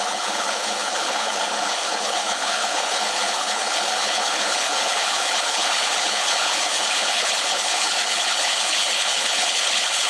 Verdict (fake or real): fake